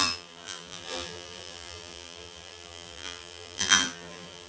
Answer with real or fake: fake